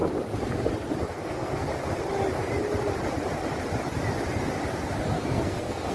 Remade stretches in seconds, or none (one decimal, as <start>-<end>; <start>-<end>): 1.1-1.7; 5.0-5.9